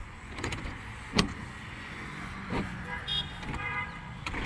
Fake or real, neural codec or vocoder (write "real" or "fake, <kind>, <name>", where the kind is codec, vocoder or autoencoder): fake, vocoder, Vocos